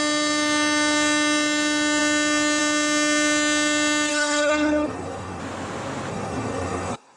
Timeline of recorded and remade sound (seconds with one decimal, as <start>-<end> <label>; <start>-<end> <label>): 0.0-4.1 recorded; 4.1-5.4 remade; 5.4-6.1 recorded; 6.1-7.2 remade